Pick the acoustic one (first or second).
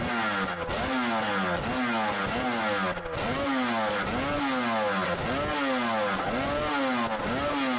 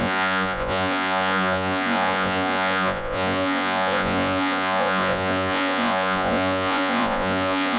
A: first